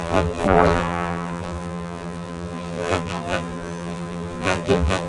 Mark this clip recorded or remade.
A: remade